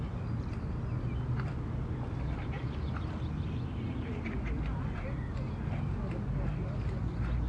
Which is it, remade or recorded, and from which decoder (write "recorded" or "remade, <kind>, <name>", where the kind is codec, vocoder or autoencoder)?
recorded